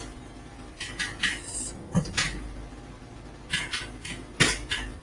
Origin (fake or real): real